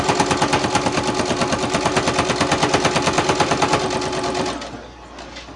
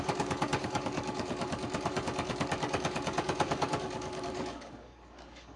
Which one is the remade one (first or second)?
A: second